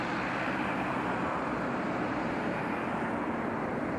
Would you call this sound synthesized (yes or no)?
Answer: no